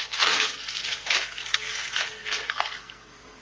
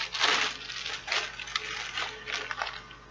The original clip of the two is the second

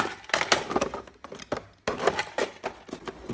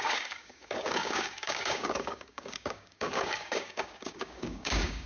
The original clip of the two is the first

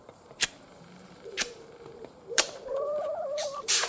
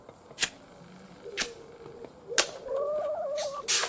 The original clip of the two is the second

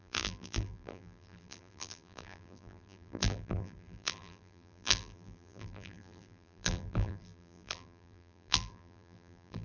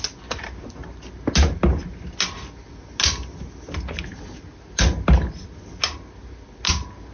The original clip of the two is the second